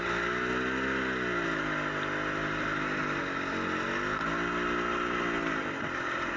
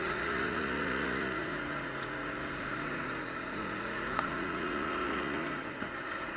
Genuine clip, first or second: first